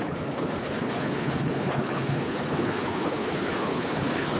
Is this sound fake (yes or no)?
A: yes